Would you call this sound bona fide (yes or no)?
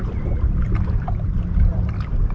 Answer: yes